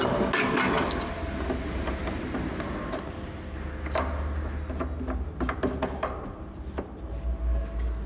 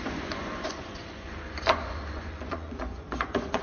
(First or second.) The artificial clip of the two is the second